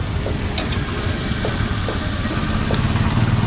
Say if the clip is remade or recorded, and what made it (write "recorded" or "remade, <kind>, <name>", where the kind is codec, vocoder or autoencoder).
recorded